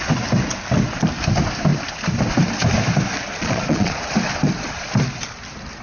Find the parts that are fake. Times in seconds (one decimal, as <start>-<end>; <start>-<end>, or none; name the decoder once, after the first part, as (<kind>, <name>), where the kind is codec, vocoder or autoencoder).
3.3-4.0 (vocoder, Vocos)